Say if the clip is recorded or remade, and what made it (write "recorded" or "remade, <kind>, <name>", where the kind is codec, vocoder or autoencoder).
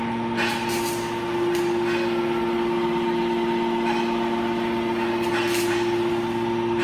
recorded